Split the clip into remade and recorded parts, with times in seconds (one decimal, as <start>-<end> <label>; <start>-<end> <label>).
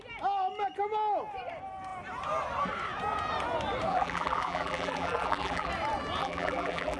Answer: 0.0-3.9 recorded; 3.9-5.7 remade; 5.7-6.2 recorded; 6.2-7.0 remade